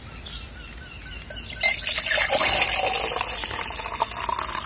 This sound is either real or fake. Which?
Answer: real